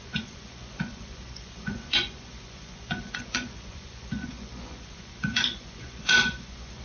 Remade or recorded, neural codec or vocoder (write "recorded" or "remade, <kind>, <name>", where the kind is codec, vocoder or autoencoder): remade, vocoder, Vocos